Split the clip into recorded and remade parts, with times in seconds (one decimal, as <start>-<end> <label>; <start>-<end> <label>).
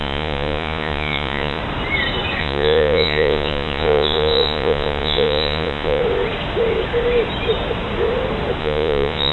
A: 0.0-1.6 remade; 1.6-2.4 recorded; 2.4-6.0 remade; 6.0-8.6 recorded; 8.6-9.3 remade